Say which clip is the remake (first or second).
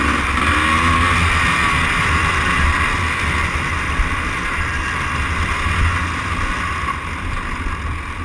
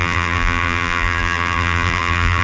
second